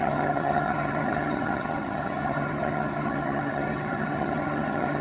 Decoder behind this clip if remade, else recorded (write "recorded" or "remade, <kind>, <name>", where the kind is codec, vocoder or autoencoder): remade, vocoder, HiFi-GAN